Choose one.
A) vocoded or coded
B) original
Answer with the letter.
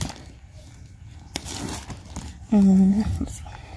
B